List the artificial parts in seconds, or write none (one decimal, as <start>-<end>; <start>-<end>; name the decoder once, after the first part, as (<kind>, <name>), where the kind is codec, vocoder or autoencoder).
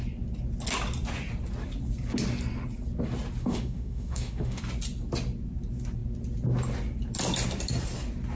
3.4-4.6 (autoencoder, DAC-VAE)